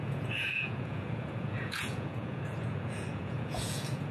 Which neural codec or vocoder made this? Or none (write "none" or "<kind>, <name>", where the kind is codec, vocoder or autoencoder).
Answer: vocoder, Vocos